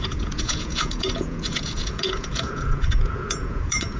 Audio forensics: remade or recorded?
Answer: remade